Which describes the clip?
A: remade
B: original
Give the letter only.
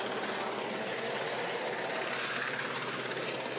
B